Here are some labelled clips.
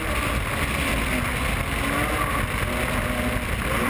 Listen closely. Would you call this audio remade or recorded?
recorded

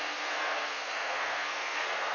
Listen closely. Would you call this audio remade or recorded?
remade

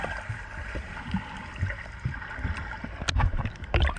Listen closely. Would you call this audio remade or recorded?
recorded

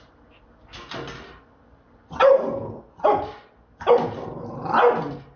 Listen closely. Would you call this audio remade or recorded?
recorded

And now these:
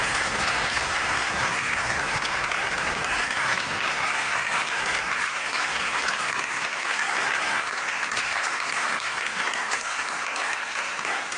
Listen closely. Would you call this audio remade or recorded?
remade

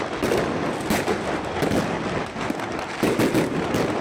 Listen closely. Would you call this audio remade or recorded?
recorded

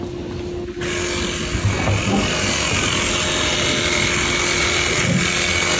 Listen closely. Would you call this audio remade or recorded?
recorded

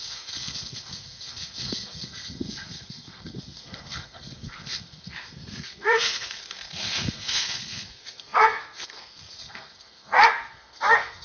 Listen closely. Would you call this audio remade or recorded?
remade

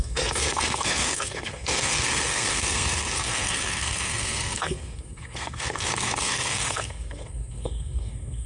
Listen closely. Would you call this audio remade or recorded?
remade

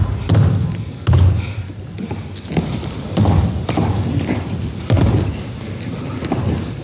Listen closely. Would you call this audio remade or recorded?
recorded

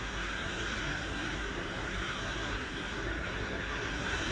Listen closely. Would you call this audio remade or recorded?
remade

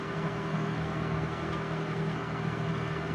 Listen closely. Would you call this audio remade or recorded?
remade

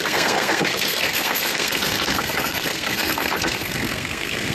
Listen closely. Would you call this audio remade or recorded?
remade